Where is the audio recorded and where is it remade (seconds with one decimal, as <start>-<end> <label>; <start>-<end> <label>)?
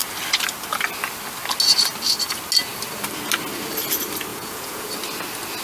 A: 0.0-4.3 recorded; 4.3-4.9 remade; 4.9-5.6 recorded